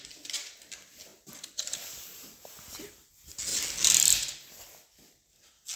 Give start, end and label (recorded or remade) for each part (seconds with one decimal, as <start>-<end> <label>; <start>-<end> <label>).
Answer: 0.0-1.1 recorded; 1.1-3.1 remade; 3.1-5.8 recorded